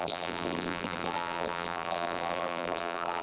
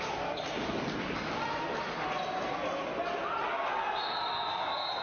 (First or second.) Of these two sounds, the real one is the second